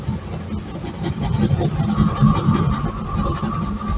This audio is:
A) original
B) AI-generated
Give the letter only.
A